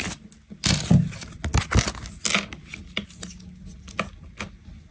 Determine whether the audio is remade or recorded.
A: recorded